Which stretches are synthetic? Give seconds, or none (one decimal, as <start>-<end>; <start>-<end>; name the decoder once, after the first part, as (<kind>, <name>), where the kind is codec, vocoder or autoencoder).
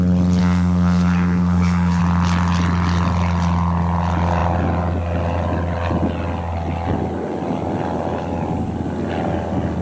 0.4-2.0 (codec, SNAC)